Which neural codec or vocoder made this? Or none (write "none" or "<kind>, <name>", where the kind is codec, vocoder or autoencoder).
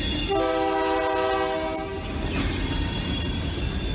none